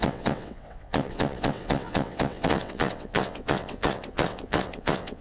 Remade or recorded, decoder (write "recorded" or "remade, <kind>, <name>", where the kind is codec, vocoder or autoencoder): remade, vocoder, WaveNeXt